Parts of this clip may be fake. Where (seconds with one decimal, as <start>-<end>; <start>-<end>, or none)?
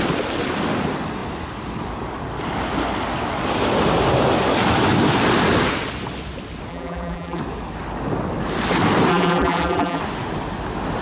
6.7-7.4; 9.1-10.0